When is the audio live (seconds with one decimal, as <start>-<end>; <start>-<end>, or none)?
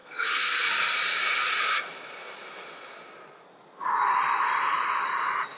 0.7-5.6